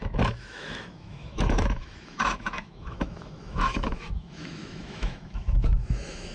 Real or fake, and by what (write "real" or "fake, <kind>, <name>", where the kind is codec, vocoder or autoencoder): fake, autoencoder, DAC-VAE